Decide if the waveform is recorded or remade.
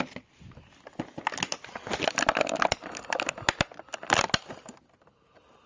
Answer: recorded